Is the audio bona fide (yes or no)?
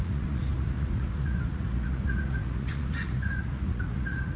no